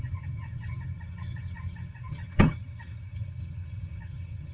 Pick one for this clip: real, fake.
fake